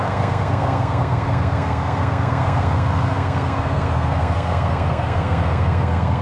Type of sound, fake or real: fake